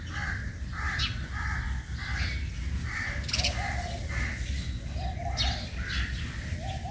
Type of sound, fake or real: real